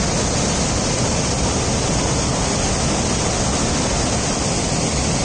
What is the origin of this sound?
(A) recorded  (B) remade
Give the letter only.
A